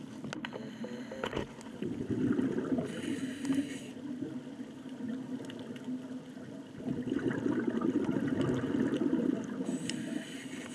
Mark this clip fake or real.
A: real